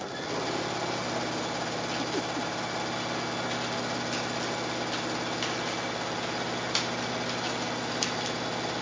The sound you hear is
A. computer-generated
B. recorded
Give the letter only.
B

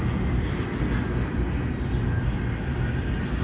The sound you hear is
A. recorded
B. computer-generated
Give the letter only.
A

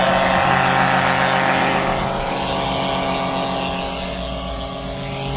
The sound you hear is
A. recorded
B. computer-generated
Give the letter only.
A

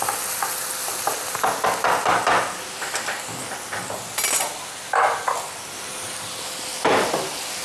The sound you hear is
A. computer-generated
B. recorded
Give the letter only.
B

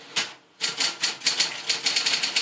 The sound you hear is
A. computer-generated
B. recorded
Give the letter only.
B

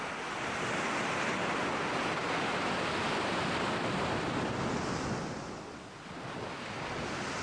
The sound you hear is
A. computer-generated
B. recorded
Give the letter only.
B